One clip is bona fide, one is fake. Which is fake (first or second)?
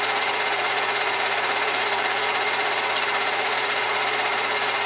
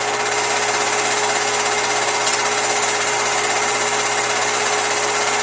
first